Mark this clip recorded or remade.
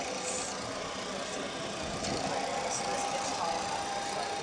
recorded